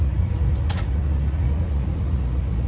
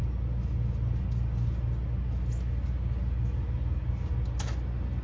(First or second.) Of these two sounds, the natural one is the second